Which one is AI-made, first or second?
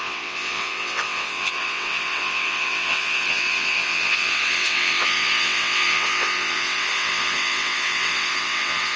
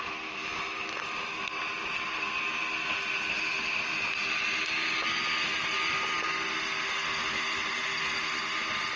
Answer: first